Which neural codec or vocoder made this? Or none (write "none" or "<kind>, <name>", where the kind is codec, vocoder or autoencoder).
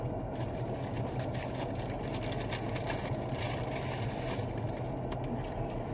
none